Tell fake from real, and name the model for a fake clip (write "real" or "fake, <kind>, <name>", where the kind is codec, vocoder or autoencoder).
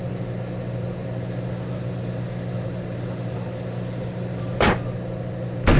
real